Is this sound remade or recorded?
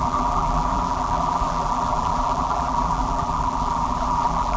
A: remade